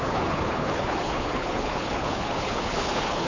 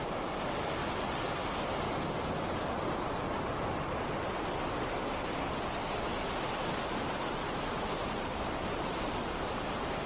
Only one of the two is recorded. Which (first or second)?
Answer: second